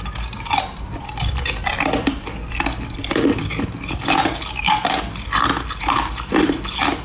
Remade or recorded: recorded